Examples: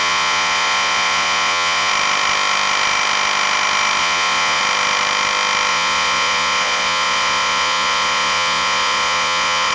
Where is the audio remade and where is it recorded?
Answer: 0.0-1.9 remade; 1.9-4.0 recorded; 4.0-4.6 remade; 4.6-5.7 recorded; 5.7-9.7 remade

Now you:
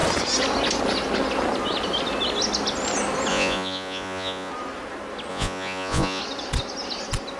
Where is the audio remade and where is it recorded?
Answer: 0.0-3.3 recorded; 3.3-4.5 remade; 4.5-5.3 recorded; 5.3-6.2 remade; 6.2-7.4 recorded

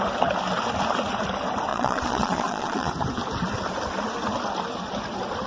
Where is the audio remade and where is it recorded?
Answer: 0.0-1.7 recorded; 1.7-2.9 remade; 2.9-5.5 recorded